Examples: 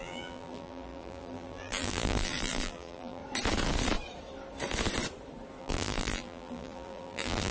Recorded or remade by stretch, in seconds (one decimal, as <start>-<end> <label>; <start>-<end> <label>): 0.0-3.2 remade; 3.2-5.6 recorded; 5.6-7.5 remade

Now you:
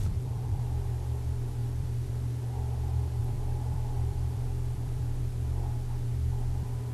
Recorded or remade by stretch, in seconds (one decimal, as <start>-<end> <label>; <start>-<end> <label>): 0.0-1.6 recorded; 1.6-2.1 remade; 2.1-3.2 recorded; 3.2-5.2 remade; 5.2-6.9 recorded

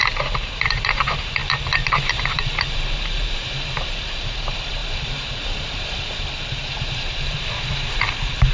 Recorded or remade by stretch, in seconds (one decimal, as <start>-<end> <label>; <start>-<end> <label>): 0.0-8.5 remade